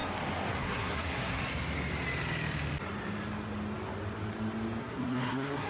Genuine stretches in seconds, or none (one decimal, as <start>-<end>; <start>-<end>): 0.0-0.6; 1.4-4.8